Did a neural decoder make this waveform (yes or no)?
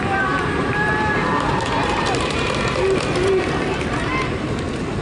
yes